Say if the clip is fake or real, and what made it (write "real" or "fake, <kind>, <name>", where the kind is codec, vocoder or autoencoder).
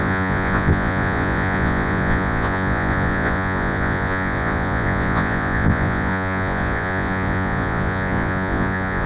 fake, vocoder, Vocos